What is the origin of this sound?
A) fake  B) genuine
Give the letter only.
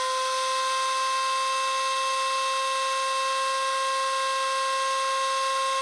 B